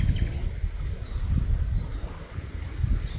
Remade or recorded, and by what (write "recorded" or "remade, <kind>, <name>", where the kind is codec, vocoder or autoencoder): recorded